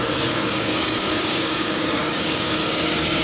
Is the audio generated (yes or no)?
yes